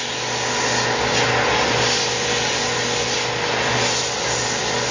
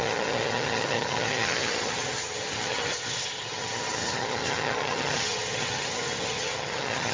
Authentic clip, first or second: first